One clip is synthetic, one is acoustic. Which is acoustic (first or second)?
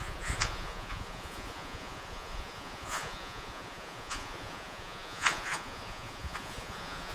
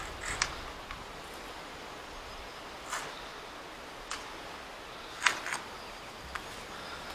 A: second